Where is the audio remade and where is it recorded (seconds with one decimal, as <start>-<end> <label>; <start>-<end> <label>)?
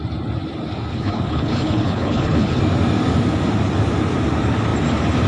0.0-0.9 recorded; 0.9-2.6 remade; 2.6-5.3 recorded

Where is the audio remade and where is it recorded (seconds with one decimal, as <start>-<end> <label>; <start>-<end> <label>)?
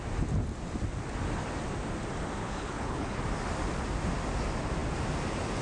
0.0-2.4 recorded; 2.4-3.2 remade; 3.2-5.6 recorded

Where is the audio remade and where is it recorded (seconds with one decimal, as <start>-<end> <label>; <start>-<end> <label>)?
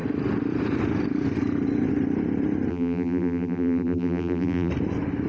0.0-2.7 recorded; 2.7-4.7 remade; 4.7-5.3 recorded